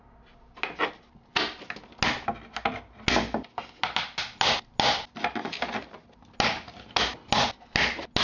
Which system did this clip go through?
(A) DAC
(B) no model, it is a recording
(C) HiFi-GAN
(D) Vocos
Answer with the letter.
B